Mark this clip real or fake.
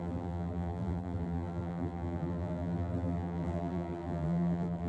fake